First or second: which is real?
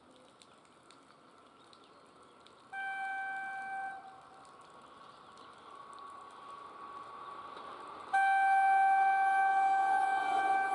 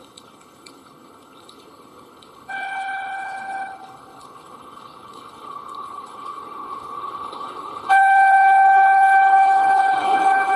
first